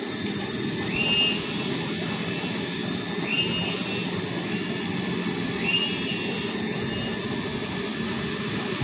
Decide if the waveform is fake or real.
real